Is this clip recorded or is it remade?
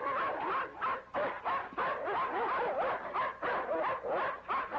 recorded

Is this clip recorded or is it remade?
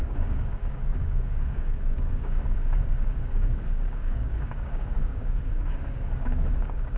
remade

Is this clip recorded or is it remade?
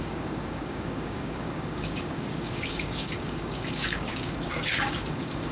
remade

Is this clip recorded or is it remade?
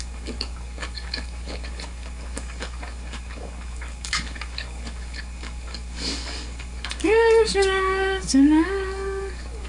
remade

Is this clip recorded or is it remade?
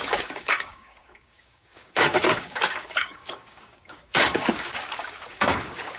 remade